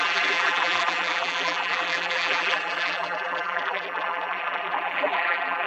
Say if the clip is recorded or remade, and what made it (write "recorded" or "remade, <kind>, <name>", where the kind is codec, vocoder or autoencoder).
remade, vocoder, BigVGAN v2